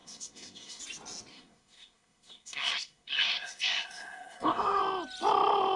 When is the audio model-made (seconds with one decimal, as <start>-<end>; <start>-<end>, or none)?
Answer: 0.0-0.8; 1.3-4.8